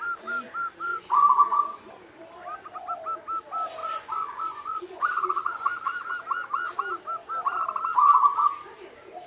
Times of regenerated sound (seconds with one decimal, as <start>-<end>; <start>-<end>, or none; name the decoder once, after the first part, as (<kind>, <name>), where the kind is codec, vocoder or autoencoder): 0.9-1.9 (vocoder, Vocos); 3.8-6.1